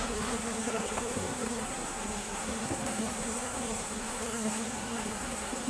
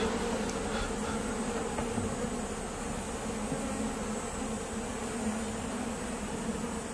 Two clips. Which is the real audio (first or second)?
second